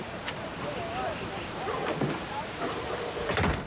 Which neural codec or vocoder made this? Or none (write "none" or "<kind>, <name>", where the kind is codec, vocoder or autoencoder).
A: none